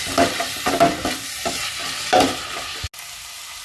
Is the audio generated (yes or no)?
no